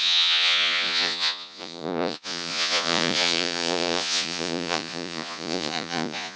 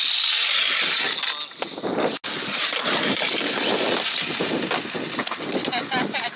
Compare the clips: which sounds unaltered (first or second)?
second